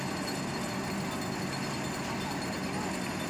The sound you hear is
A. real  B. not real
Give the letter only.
A